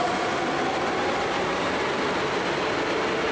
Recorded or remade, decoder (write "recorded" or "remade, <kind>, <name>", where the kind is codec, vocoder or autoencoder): recorded